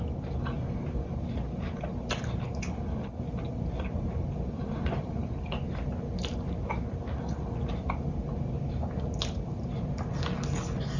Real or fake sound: real